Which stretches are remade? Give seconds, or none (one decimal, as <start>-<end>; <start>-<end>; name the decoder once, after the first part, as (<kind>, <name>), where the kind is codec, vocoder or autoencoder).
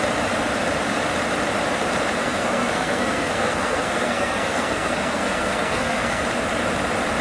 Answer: 2.2-6.2 (codec, SNAC)